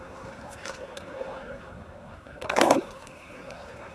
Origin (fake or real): fake